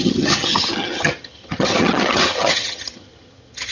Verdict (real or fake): fake